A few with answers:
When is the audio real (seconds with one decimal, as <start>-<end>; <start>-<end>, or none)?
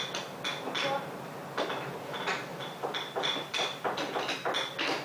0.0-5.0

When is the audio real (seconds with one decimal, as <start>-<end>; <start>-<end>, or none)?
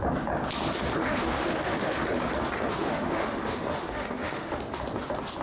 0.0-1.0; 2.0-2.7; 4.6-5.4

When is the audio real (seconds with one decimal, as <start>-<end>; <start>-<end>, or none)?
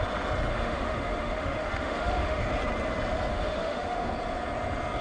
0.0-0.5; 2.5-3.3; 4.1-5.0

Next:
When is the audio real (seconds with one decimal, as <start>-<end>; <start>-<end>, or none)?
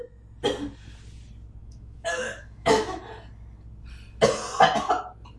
0.0-1.6; 3.0-5.4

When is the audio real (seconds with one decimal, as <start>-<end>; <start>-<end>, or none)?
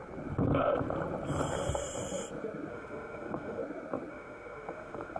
0.0-2.7; 3.6-4.1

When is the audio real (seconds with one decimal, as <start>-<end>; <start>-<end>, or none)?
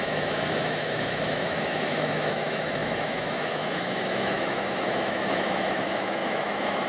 none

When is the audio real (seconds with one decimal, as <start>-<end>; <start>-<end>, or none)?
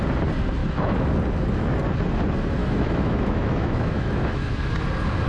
0.0-0.6; 1.1-2.6; 4.7-5.3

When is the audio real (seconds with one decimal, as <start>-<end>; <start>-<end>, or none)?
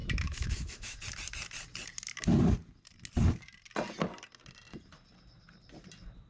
1.0-6.3